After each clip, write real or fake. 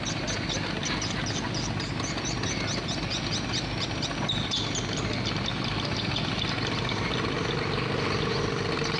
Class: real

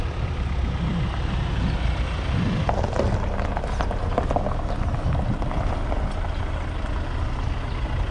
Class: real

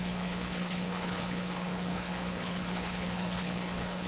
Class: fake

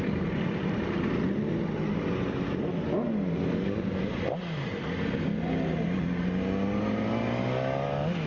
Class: real